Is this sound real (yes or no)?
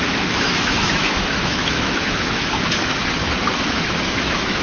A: no